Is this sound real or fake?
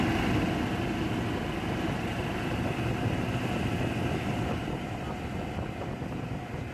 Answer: real